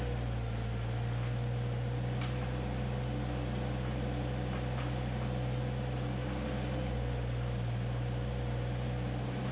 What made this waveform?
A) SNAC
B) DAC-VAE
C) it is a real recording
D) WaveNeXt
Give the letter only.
C